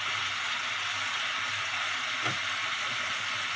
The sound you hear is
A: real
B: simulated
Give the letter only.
A